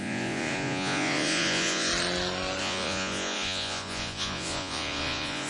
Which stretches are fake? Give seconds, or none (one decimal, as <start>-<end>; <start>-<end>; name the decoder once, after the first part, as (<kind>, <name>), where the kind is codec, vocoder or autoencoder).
0.0-1.9 (vocoder, Vocos); 2.6-5.5